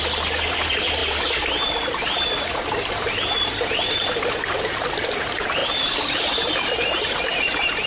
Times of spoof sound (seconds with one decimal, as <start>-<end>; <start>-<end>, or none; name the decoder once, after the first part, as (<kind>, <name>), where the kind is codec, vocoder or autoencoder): none